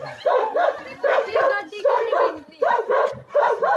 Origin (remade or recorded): recorded